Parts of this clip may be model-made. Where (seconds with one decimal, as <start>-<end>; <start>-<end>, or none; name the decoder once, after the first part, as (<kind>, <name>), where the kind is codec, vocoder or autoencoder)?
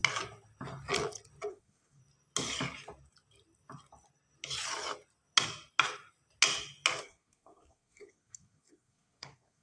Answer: 1.5-2.0 (codec, SNAC); 7.0-9.6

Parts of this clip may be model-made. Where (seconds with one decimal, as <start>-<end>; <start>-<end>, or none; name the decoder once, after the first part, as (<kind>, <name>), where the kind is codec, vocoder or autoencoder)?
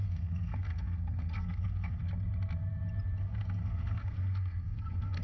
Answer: 0.0-2.0 (codec, SNAC); 3.2-5.2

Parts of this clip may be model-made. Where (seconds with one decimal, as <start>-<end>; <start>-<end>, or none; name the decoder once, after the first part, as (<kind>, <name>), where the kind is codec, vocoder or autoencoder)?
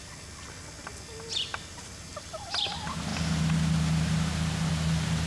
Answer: none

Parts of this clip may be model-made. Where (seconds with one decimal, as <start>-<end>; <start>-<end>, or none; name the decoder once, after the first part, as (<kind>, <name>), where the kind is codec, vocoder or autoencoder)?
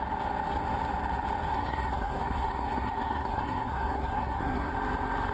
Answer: 1.5-4.7 (codec, SNAC)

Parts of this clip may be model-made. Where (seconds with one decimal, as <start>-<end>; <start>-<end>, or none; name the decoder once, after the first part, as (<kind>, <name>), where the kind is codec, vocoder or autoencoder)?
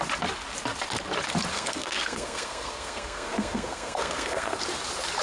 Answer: 1.5-4.6 (codec, SNAC)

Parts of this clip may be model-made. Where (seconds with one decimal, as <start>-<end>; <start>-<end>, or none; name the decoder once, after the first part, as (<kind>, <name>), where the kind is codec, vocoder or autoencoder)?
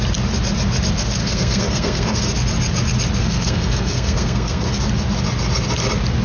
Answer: 1.2-2.2 (codec, SNAC); 3.2-4.7